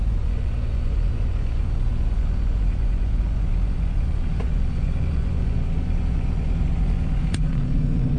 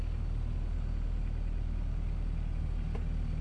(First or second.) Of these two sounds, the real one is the second